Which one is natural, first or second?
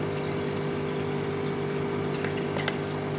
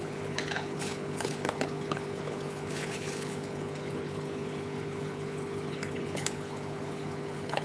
first